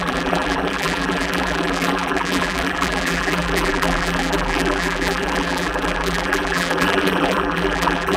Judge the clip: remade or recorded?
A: remade